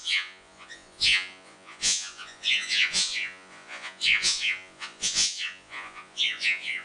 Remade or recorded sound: remade